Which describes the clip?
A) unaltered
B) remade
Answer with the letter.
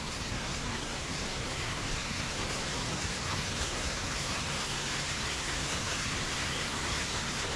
B